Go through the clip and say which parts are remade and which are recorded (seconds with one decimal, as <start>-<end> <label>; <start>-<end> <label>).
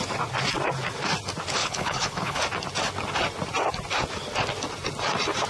0.0-1.6 recorded; 1.6-2.4 remade; 2.4-5.5 recorded